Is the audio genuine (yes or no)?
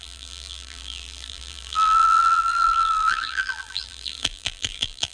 no